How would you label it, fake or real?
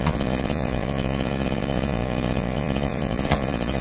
fake